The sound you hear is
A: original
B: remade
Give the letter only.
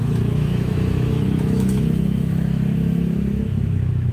B